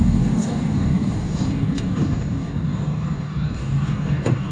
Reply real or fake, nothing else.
fake